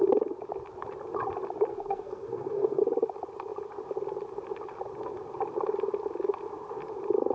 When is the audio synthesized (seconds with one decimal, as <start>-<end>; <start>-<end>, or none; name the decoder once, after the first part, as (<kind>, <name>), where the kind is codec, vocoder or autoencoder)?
1.7-2.8 (codec, SNAC)

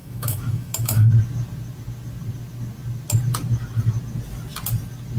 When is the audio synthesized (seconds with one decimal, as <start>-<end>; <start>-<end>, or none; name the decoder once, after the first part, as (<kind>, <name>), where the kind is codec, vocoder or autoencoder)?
0.0-1.1 (autoencoder, DAC-VAE)

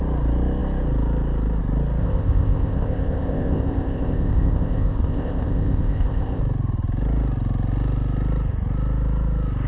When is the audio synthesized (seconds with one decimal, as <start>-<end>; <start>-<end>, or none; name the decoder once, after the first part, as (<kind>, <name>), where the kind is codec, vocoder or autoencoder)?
2.0-6.4 (codec, ZipCodec)

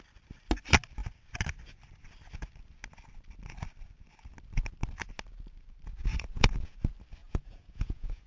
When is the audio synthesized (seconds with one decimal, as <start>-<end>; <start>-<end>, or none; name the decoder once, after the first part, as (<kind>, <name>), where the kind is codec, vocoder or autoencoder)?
6.1-6.8 (vocoder, Vocos); 7.2-8.3

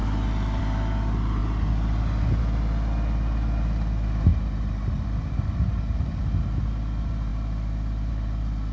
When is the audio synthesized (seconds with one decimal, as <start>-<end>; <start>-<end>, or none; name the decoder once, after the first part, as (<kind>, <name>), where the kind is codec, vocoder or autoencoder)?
1.4-2.4 (vocoder, BigVGAN v2); 4.3-6.2

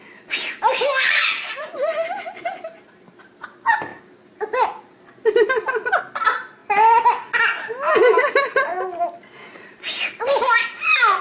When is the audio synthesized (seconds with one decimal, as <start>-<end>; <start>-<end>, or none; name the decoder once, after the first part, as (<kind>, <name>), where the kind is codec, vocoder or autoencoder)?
0.0-6.6 (vocoder, BigVGAN v2); 8.2-8.7; 9.5-11.2